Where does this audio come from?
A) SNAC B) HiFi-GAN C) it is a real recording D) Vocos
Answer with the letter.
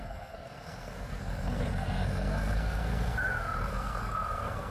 A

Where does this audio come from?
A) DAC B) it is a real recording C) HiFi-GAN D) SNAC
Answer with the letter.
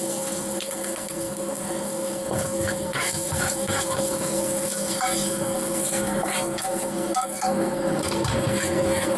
D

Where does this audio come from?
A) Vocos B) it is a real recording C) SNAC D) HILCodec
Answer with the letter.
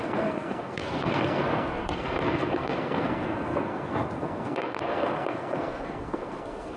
C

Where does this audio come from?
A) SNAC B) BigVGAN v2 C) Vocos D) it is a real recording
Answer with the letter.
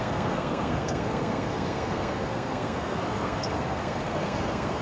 A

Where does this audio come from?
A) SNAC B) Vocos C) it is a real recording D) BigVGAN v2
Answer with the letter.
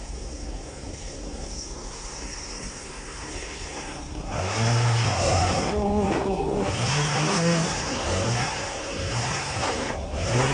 A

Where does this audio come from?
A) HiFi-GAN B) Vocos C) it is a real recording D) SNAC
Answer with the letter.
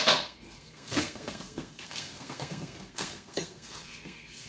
D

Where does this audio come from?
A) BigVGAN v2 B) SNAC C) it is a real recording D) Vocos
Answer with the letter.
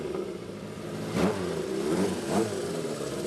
C